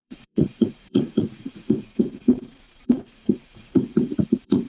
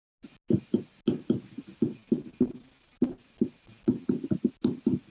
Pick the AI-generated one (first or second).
first